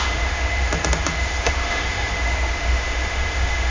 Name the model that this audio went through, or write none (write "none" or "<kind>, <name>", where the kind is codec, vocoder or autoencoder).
autoencoder, DAC-VAE